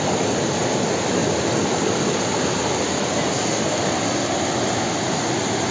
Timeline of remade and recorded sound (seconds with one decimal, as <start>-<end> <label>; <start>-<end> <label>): 0.0-5.7 recorded